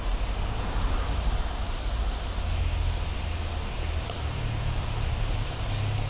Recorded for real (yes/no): yes